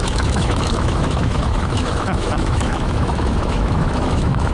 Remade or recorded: remade